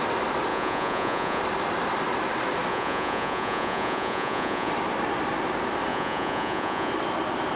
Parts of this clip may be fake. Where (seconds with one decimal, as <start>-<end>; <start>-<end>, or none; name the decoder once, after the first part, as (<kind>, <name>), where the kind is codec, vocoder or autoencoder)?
0.5-1.4 (vocoder, Vocos); 2.7-4.7; 5.9-6.9